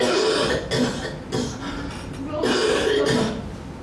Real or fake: real